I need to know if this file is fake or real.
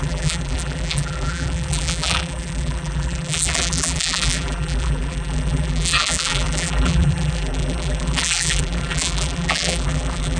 fake